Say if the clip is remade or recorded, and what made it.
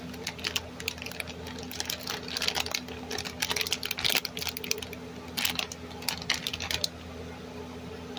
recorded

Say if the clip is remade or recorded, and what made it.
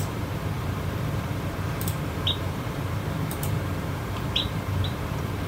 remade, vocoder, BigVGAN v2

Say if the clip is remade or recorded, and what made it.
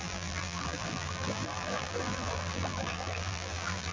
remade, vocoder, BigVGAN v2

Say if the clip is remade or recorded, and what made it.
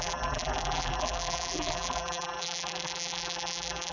remade, vocoder, BigVGAN v2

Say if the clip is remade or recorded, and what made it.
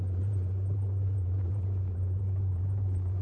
remade, vocoder, BigVGAN v2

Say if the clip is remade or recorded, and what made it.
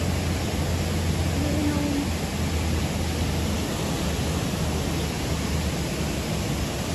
recorded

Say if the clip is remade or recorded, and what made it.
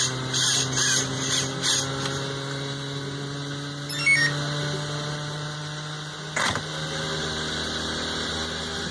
remade, vocoder, BigVGAN v2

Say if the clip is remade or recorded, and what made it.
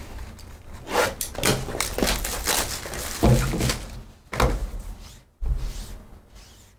recorded